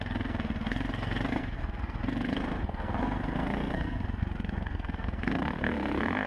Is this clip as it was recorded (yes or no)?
no